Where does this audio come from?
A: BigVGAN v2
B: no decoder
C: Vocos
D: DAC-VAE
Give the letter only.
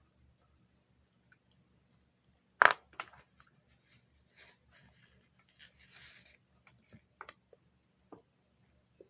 B